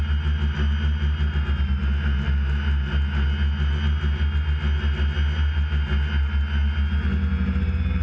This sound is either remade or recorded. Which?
recorded